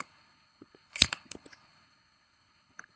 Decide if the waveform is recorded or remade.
remade